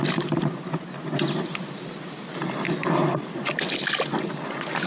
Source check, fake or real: real